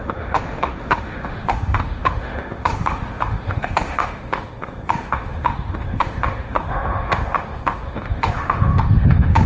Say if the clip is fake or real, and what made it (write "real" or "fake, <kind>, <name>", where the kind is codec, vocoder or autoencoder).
fake, autoencoder, DAC-VAE